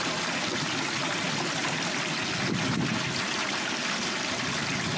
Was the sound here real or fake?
real